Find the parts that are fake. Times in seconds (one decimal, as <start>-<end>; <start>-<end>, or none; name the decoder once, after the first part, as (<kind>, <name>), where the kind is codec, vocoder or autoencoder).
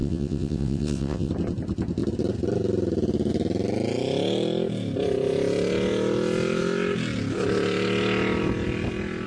0.0-1.3 (vocoder, WaveNeXt)